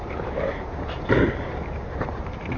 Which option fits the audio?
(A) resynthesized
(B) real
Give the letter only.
A